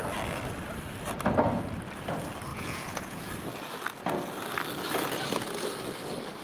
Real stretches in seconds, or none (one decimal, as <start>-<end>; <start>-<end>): 0.0-2.5; 3.3-6.4

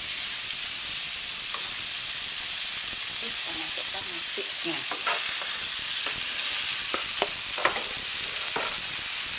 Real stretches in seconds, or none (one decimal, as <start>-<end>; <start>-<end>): 0.0-9.4